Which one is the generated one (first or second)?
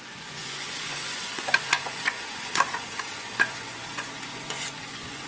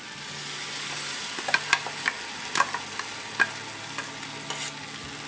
first